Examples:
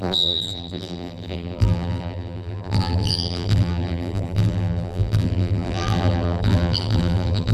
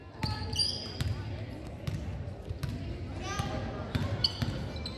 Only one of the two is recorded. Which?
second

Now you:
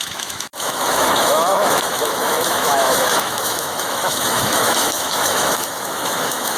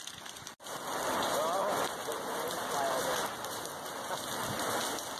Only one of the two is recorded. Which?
second